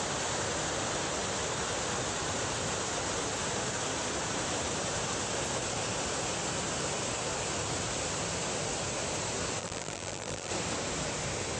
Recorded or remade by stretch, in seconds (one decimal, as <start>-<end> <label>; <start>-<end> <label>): 0.0-9.6 recorded; 9.6-10.5 remade; 10.5-11.6 recorded